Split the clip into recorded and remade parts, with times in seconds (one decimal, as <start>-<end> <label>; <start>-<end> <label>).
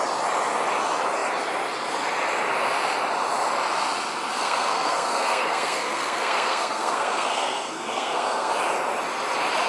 0.0-4.3 recorded; 4.3-8.5 remade; 8.5-9.7 recorded